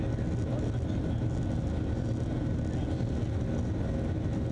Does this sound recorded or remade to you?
recorded